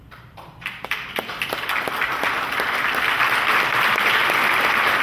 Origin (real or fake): fake